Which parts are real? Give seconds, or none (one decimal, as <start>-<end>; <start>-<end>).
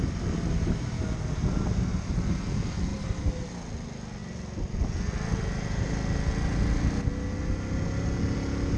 0.0-8.8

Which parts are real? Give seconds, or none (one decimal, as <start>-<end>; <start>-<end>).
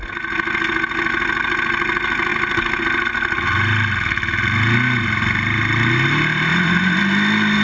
0.0-6.5; 7.0-7.6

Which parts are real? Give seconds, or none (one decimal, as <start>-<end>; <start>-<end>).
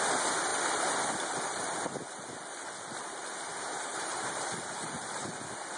0.0-3.9; 5.3-5.8